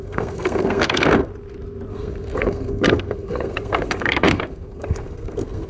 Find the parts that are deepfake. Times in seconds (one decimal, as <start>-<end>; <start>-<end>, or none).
0.0-1.3; 1.9-5.7